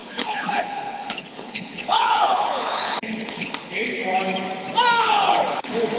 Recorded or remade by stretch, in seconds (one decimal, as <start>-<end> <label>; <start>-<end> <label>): 0.0-4.0 remade; 4.0-5.0 recorded; 5.0-6.0 remade